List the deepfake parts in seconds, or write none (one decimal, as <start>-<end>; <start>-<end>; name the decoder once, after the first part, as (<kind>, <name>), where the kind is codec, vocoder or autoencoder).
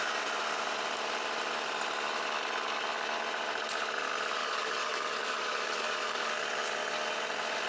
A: 4.4-6.3 (codec, DAC)